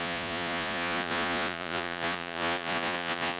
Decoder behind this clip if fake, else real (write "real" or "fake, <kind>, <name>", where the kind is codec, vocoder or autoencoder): fake, vocoder, Vocos